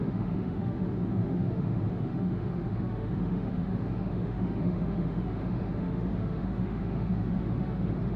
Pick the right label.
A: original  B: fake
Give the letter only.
B